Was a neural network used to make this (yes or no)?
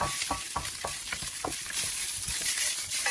no